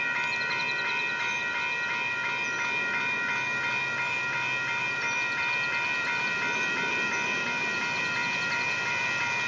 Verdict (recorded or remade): remade